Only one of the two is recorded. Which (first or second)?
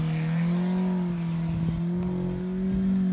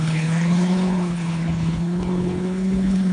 first